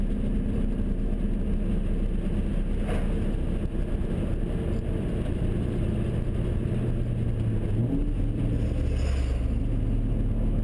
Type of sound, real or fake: real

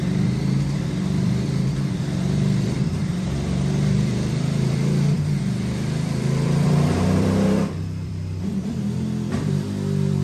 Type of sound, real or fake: fake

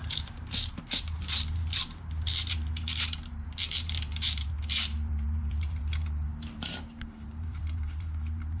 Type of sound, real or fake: fake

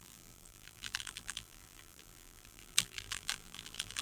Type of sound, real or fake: fake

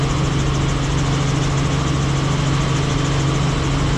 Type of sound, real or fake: real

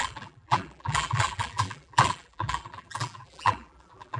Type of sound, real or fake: fake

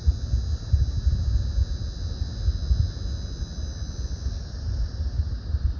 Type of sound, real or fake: real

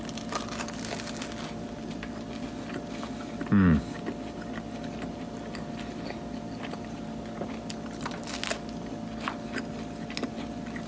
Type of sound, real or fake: real